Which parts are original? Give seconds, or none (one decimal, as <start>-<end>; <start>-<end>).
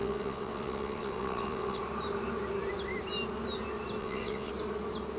1.8-4.0; 4.5-5.2